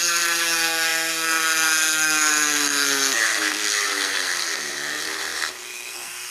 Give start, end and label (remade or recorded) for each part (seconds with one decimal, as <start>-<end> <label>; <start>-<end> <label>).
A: 0.0-6.3 remade